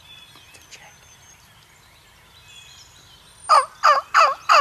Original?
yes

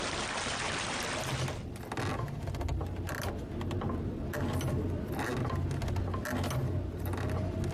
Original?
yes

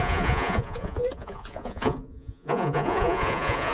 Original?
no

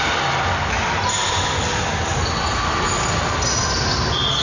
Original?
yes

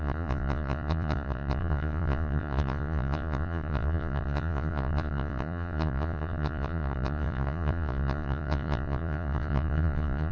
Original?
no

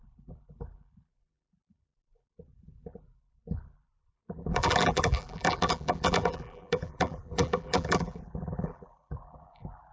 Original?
no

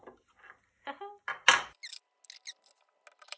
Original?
yes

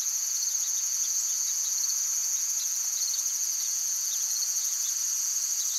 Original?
no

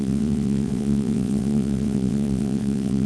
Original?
no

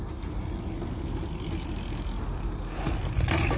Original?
yes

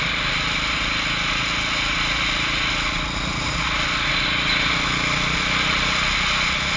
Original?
yes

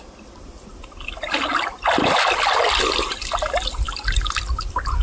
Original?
yes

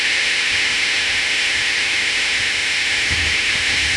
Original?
no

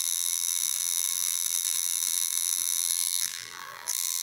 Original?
no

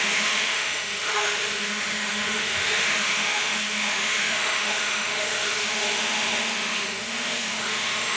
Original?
no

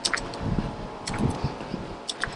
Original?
yes